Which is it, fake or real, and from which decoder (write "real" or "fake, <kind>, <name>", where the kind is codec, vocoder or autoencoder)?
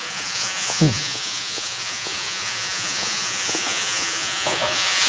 fake, vocoder, Vocos